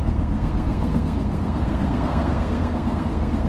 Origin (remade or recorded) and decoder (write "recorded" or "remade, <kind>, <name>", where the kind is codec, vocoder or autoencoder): remade, codec, SNAC